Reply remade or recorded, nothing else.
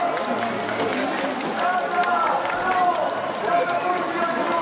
recorded